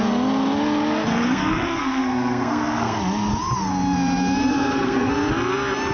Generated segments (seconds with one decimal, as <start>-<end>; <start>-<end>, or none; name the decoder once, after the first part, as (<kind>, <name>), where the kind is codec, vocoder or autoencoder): 1.1-3.0 (codec, SNAC); 4.5-5.1